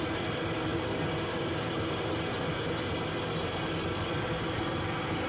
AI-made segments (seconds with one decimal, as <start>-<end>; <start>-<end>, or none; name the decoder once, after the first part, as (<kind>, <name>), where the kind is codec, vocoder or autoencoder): none